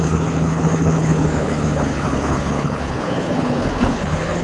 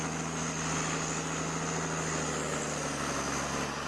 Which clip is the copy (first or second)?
first